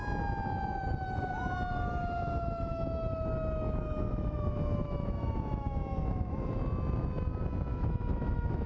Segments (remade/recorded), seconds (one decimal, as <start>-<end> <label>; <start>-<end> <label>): 0.0-1.7 recorded; 1.7-6.6 remade; 6.6-7.7 recorded; 7.7-8.7 remade